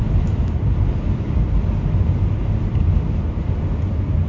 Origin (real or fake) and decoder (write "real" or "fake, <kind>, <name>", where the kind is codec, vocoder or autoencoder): real